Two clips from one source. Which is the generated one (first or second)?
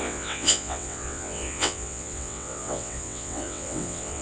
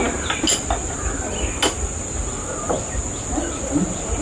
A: first